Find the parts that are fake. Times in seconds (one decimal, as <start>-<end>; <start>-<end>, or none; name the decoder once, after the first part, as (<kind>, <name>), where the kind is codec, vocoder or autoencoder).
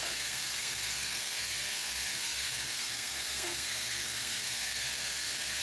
0.0-5.6 (codec, SNAC)